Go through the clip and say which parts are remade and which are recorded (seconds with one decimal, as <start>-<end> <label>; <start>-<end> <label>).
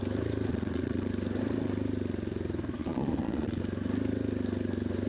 0.0-0.5 recorded; 0.5-1.1 remade; 1.1-2.8 recorded; 2.8-3.6 remade; 3.6-5.1 recorded